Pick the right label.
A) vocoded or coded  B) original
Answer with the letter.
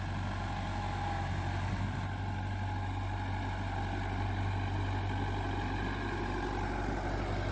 B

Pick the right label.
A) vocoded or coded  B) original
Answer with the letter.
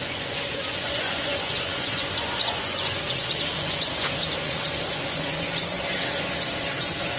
A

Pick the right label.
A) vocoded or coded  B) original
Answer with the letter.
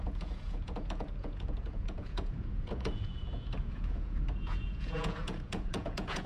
A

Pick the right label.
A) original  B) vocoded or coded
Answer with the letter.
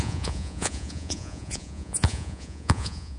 B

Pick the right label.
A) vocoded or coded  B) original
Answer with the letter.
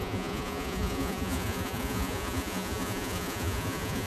A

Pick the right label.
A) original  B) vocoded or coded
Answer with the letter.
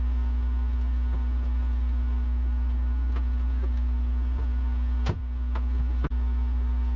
A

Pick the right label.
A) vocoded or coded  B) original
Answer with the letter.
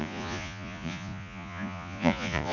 A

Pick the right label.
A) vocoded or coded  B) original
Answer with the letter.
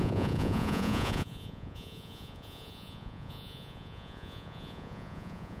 A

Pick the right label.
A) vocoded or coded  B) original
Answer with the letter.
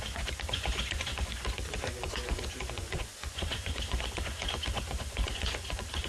A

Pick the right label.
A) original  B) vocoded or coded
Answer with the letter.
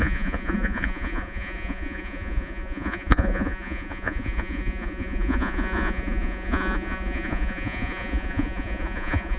B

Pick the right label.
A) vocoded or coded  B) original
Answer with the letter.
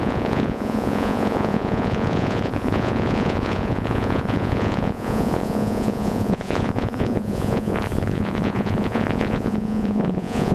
A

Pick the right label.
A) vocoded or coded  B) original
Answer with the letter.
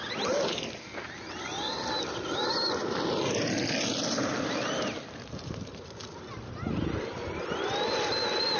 B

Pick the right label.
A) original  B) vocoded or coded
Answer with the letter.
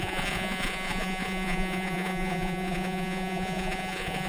B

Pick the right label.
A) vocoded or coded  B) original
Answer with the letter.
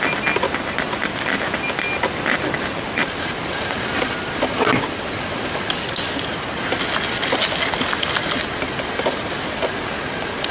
B